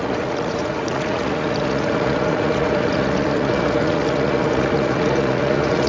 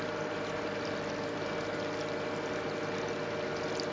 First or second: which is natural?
second